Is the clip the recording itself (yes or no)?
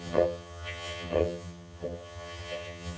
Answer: no